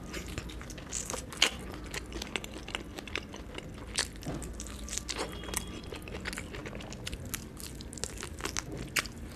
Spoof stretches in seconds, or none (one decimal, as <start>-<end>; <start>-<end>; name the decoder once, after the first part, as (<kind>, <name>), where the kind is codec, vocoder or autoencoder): none